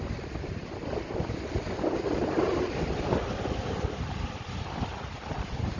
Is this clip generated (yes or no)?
no